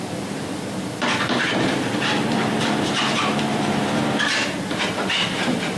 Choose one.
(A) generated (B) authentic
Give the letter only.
A